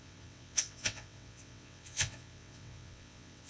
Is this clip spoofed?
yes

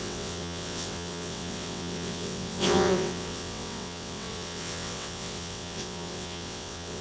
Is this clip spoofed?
yes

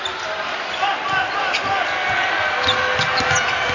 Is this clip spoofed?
no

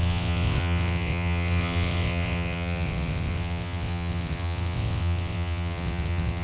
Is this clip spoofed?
yes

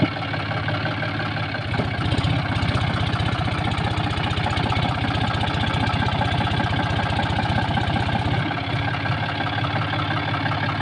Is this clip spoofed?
no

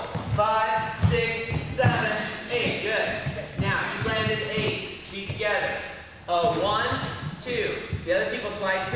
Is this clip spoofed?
no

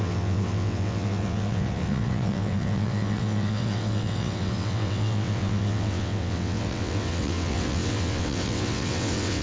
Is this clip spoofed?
yes